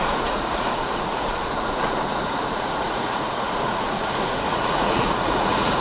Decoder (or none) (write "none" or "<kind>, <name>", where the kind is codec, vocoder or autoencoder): vocoder, Vocos